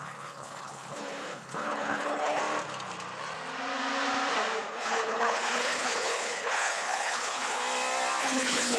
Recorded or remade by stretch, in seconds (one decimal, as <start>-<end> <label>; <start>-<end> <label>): 0.0-2.4 remade; 2.4-4.7 recorded; 4.7-7.6 remade; 7.6-8.2 recorded; 8.2-8.8 remade